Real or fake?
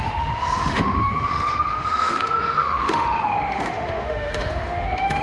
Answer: fake